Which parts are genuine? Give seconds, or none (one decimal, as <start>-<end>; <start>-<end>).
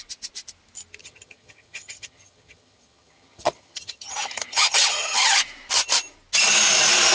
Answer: 0.0-1.0; 5.3-7.1